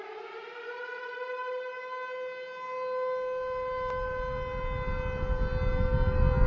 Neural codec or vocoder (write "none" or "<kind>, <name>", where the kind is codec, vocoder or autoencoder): none